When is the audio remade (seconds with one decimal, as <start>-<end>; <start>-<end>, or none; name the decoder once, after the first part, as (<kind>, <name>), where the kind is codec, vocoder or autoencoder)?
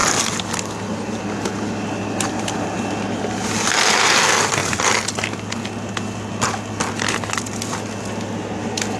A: none